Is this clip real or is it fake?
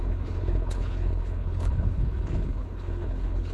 fake